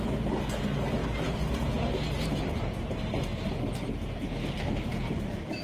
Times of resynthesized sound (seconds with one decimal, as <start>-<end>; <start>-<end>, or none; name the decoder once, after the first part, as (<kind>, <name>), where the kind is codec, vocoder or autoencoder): none